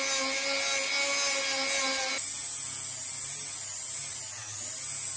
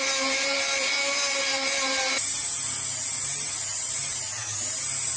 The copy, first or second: second